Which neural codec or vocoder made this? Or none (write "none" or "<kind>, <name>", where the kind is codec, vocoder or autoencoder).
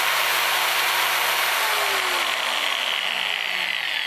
none